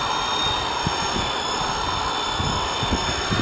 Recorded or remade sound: recorded